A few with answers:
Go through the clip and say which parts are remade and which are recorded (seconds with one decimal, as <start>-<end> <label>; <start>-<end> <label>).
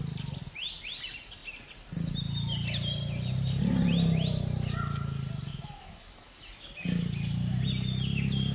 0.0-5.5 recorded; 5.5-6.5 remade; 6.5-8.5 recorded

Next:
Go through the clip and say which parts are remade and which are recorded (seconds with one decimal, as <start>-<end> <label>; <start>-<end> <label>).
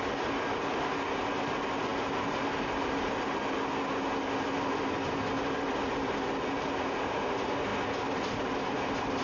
0.0-9.2 recorded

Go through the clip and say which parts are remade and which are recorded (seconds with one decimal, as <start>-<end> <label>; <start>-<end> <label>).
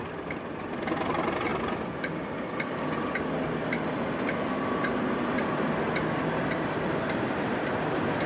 0.0-1.5 remade; 1.5-6.5 recorded; 6.5-8.3 remade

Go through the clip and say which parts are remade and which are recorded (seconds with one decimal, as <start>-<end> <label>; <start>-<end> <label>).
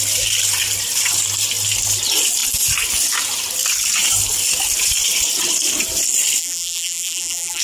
0.0-6.4 recorded; 6.4-7.6 remade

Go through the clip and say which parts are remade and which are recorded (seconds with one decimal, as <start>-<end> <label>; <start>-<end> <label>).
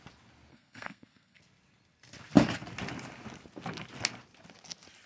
0.0-0.5 recorded; 0.5-1.4 remade; 1.4-5.1 recorded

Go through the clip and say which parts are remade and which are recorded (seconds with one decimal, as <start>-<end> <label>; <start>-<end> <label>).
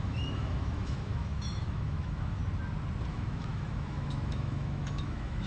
0.0-2.4 remade; 2.4-3.1 recorded; 3.1-5.5 remade